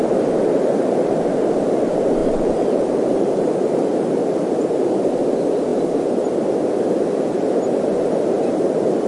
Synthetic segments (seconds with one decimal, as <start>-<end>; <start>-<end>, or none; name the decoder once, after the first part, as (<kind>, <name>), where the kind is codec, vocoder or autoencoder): 2.2-4.2 (vocoder, BigVGAN v2)